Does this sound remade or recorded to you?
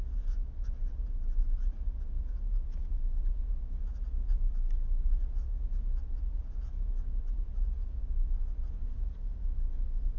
recorded